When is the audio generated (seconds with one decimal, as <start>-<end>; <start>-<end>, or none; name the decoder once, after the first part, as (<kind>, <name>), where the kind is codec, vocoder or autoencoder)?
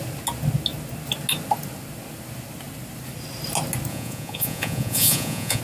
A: 3.9-5.6 (vocoder, Vocos)